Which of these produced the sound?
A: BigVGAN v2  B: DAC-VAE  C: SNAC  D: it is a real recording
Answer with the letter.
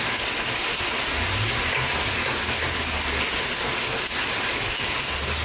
D